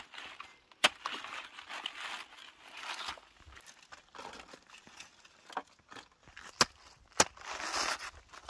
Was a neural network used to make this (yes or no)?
no